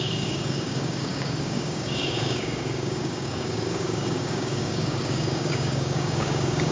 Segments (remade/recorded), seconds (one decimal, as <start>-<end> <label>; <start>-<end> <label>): 0.0-6.7 remade